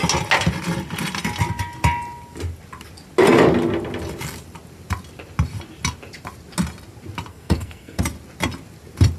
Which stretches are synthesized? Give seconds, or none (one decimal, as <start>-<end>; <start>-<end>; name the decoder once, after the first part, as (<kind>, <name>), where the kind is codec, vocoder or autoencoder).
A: 7.3-8.0 (codec, SNAC)